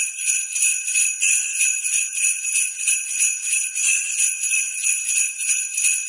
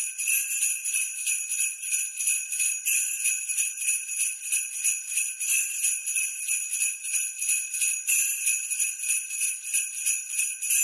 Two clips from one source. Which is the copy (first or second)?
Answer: first